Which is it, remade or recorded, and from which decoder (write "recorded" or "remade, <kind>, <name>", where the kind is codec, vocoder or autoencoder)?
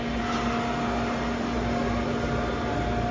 recorded